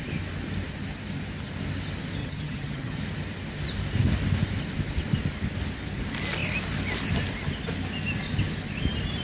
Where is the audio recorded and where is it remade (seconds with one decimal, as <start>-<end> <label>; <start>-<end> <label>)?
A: 0.0-2.2 recorded; 2.2-3.0 remade; 3.0-9.2 recorded

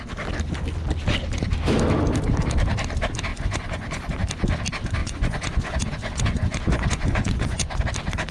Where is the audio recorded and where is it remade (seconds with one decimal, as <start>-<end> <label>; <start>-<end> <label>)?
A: 0.0-3.3 recorded; 3.3-4.1 remade; 4.1-5.0 recorded; 5.0-7.8 remade; 7.8-8.3 recorded

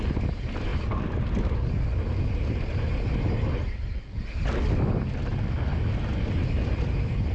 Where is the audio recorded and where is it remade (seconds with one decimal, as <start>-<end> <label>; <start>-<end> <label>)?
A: 0.0-7.3 recorded

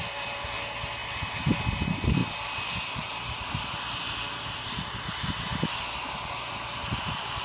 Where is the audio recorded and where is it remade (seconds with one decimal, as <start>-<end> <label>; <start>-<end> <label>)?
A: 0.0-1.0 recorded; 1.0-1.6 remade; 1.6-2.2 recorded; 2.2-3.8 remade; 3.8-5.5 recorded; 5.5-7.4 remade

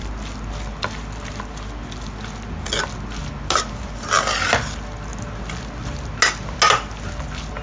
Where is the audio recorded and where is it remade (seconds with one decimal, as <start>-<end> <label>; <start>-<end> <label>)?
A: 0.0-7.6 recorded

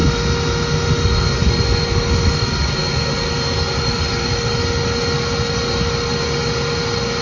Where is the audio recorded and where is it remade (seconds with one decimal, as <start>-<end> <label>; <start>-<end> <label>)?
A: 0.0-7.2 recorded

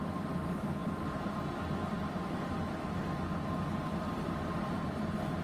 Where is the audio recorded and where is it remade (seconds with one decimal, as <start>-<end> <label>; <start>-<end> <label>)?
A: 0.0-3.7 recorded; 3.7-5.0 remade; 5.0-5.4 recorded